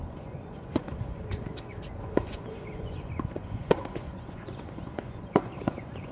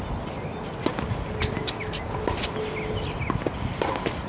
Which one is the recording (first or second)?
second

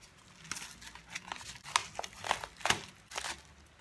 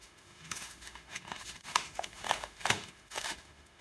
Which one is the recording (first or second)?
first